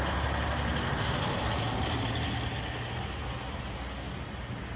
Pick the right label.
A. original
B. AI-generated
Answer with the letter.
A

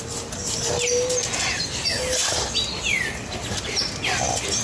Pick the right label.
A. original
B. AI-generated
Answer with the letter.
A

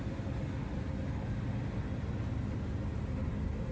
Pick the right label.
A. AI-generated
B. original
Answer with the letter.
B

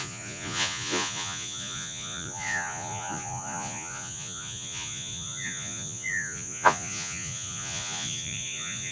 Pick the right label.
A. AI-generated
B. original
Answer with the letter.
A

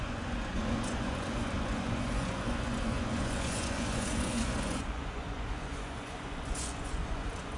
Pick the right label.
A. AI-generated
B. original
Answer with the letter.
A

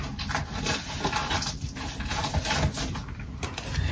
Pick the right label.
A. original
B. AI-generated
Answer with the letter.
A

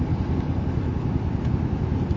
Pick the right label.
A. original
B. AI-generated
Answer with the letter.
A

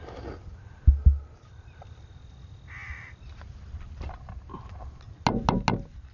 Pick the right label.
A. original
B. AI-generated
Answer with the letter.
A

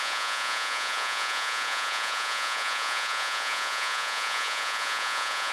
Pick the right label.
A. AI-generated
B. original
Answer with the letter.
A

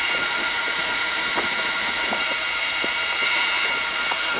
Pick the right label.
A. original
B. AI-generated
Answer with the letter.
B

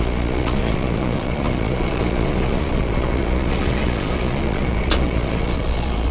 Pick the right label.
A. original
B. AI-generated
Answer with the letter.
B